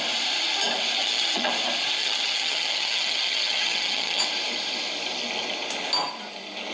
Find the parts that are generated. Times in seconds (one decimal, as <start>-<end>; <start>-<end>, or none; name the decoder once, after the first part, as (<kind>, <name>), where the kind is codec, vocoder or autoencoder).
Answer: 1.0-1.5 (vocoder, HiFi-GAN); 2.0-4.2